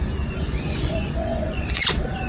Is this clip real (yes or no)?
no